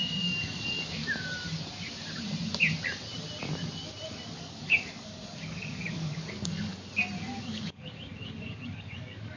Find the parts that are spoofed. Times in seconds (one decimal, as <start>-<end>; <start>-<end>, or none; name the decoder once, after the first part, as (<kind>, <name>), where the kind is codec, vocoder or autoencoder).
0.0-1.0 (codec, DAC); 4.4-6.7; 7.4-9.4